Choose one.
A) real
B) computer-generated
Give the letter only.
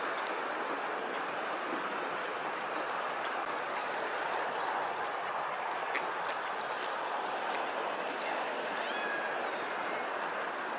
A